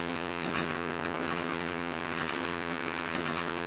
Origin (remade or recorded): remade